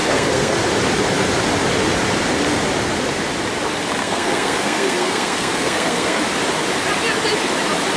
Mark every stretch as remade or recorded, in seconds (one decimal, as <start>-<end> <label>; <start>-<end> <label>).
0.0-0.5 remade; 0.5-4.0 recorded; 4.0-6.2 remade; 6.2-8.0 recorded